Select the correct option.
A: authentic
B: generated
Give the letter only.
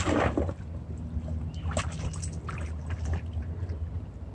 A